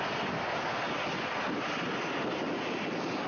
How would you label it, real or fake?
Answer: real